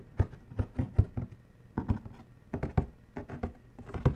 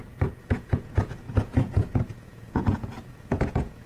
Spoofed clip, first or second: second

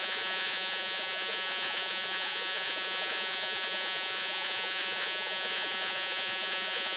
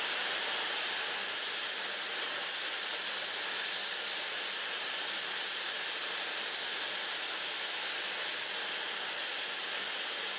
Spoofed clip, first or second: first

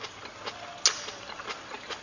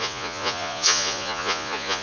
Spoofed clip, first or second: second